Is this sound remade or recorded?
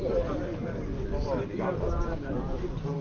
remade